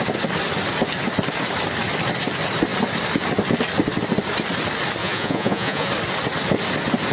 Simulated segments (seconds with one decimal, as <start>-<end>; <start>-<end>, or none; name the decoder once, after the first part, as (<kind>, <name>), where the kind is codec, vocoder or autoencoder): 5.0-5.9 (vocoder, Vocos)